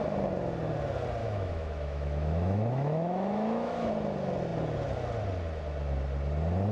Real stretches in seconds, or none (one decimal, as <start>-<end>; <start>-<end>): 0.0-1.2; 3.9-6.7